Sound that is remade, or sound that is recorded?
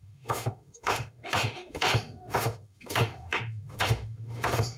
remade